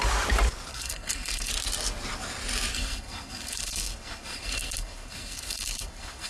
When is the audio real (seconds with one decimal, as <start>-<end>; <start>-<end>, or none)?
0.0-0.7; 1.5-2.7